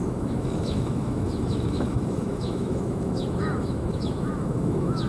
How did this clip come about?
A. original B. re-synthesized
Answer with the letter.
B